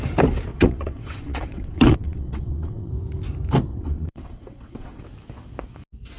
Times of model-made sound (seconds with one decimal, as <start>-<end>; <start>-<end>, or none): 0.5-2.9; 3.7-5.0